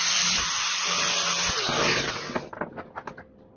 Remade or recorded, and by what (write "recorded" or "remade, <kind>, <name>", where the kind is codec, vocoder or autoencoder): recorded